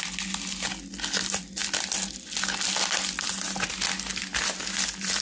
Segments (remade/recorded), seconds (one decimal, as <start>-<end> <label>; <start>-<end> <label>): 0.0-5.2 recorded